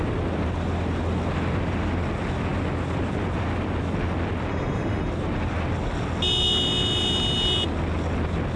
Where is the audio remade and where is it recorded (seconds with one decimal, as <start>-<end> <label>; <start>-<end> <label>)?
0.0-4.5 recorded; 4.5-5.1 remade; 5.1-8.6 recorded